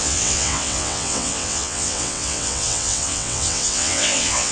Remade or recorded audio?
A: remade